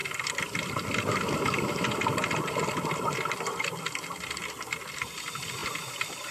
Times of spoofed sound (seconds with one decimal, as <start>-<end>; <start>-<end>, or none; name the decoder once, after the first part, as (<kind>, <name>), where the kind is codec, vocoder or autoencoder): none